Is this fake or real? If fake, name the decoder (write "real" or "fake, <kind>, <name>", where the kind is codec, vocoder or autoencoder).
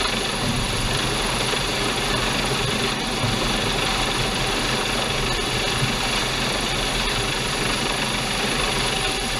real